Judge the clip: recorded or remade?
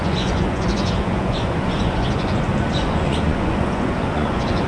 remade